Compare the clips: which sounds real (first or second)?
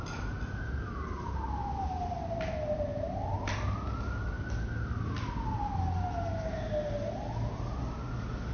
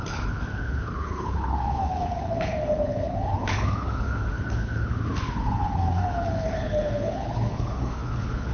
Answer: first